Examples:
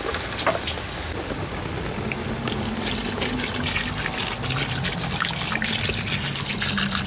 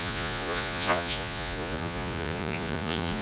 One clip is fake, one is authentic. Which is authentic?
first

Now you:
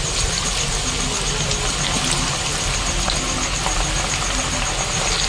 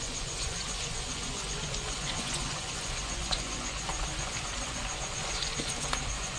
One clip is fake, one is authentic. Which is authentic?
first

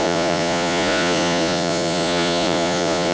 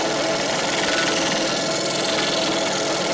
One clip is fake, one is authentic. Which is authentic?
second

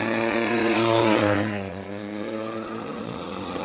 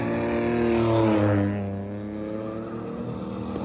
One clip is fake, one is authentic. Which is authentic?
second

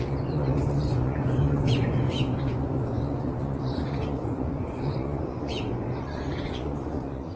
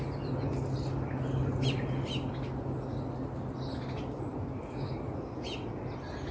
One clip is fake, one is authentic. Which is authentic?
second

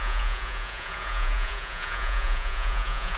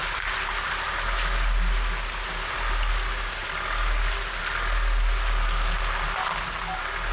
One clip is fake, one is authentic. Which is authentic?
second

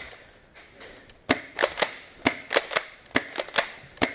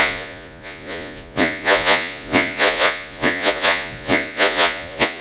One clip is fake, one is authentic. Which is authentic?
first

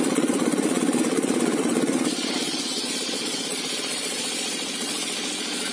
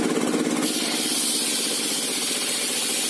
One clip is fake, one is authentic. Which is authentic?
second